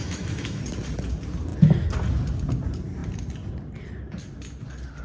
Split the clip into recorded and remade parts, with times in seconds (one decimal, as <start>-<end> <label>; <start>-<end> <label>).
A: 0.0-0.6 remade; 0.6-5.0 recorded